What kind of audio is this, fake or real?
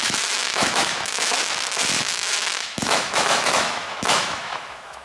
fake